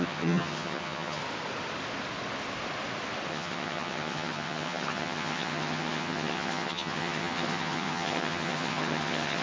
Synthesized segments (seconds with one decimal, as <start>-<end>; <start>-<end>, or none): 0.0-1.2; 3.3-9.4